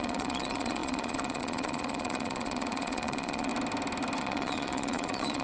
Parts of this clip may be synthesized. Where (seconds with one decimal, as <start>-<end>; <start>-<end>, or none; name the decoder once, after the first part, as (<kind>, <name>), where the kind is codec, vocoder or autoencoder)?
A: 0.0-3.5 (vocoder, Vocos); 4.2-5.4